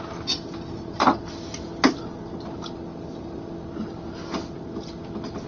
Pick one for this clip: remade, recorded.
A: recorded